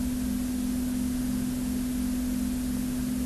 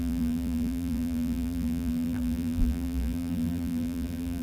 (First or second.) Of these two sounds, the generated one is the second